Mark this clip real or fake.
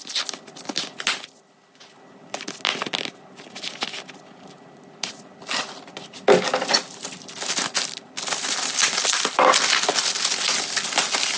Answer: real